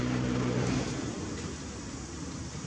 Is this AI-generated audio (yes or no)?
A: yes